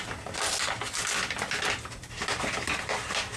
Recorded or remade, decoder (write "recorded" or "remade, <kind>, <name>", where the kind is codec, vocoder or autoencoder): recorded